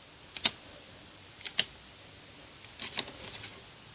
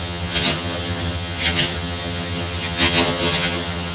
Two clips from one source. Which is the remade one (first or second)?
second